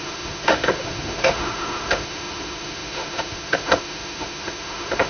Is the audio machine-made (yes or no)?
yes